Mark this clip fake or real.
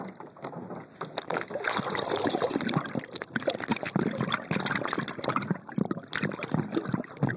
real